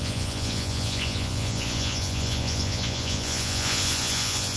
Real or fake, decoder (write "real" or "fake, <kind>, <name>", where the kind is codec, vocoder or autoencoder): fake, vocoder, Vocos